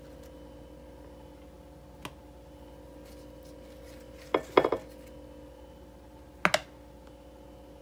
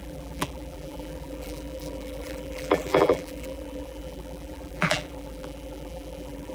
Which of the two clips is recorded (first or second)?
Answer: first